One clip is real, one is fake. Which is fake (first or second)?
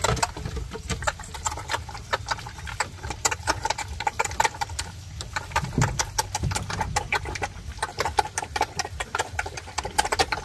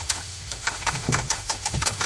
second